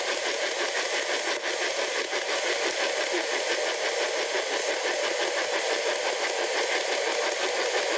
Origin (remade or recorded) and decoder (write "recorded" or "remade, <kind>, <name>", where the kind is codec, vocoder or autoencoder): recorded